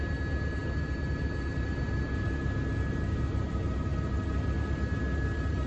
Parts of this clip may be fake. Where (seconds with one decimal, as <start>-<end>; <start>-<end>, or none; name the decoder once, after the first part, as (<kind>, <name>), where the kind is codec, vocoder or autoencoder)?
none